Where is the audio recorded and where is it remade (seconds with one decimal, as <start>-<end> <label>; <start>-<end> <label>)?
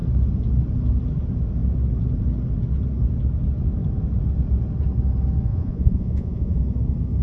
0.0-5.5 recorded; 5.5-6.6 remade; 6.6-7.2 recorded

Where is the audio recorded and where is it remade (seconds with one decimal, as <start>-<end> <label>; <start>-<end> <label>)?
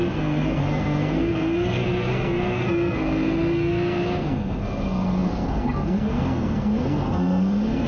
0.0-7.9 remade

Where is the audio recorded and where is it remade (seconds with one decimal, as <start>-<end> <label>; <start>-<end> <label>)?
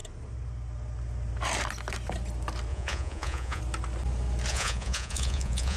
0.0-2.7 recorded; 2.7-3.6 remade; 3.6-4.5 recorded; 4.5-5.8 remade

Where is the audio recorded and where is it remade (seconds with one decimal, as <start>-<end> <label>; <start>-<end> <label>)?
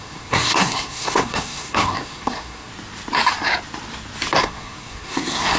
0.0-2.7 remade; 2.7-4.4 recorded; 4.4-5.6 remade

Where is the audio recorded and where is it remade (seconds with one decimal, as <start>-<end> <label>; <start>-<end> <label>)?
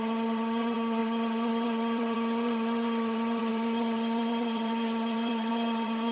0.0-6.1 remade